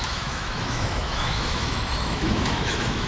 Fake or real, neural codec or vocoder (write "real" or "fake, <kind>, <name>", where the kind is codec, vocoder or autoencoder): fake, autoencoder, DAC-VAE